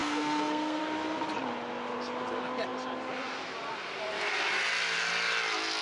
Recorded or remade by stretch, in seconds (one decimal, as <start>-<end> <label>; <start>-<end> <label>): 0.0-0.8 remade; 0.8-5.8 recorded